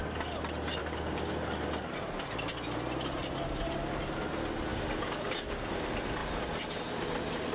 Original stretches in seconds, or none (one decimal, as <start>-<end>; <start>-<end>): 0.0-0.8; 1.3-4.7; 5.7-7.5